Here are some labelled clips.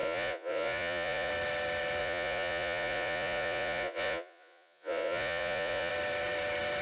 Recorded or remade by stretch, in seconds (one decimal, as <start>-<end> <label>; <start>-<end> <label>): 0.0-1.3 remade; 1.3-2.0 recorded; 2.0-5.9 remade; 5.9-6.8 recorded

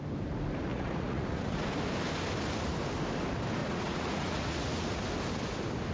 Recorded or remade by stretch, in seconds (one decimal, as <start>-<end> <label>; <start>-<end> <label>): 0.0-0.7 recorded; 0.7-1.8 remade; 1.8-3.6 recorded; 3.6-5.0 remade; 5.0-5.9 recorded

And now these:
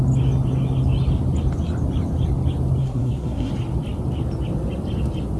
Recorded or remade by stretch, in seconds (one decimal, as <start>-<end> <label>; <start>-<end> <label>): 0.0-2.8 recorded; 2.8-3.5 remade; 3.5-5.4 recorded

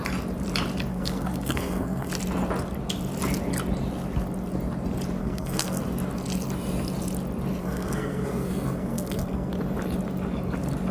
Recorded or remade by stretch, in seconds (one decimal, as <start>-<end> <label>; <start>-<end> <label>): 0.0-0.9 recorded; 0.9-2.1 remade; 2.1-5.2 recorded; 5.2-5.8 remade; 5.8-7.6 recorded; 7.6-9.5 remade; 9.5-10.9 recorded

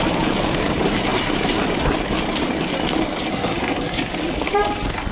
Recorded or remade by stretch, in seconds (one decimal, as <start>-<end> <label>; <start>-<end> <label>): 0.0-3.3 recorded; 3.3-4.1 remade; 4.1-5.1 recorded

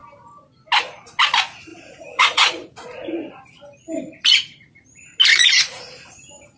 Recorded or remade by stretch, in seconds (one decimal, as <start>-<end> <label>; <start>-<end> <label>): 0.0-1.7 recorded; 1.7-3.4 remade; 3.4-5.3 recorded; 5.3-5.9 remade; 5.9-6.6 recorded

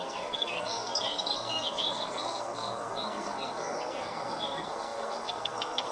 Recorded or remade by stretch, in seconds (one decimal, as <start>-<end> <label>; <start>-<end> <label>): 0.0-5.9 remade